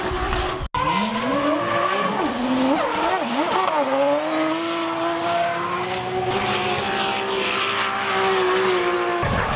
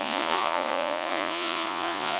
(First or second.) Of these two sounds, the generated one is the second